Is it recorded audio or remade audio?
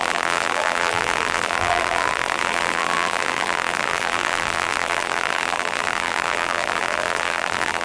remade